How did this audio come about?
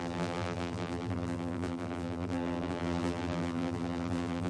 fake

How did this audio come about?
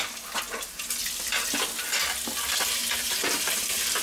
real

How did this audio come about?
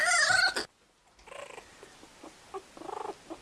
real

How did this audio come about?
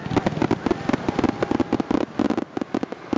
real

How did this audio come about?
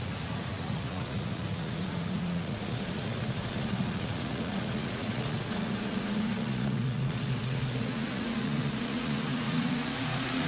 fake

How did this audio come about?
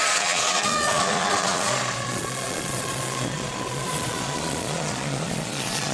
fake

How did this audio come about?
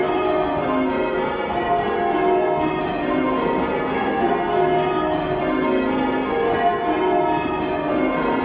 real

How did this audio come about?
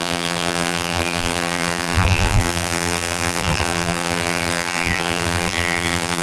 fake